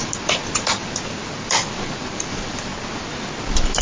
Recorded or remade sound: recorded